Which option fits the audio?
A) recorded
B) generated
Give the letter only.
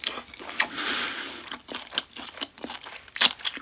A